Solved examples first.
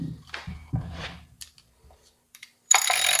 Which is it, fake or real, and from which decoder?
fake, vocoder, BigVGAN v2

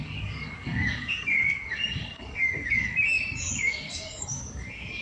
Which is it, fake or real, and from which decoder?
fake, codec, DAC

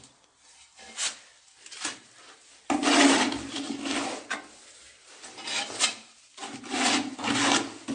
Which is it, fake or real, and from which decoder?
real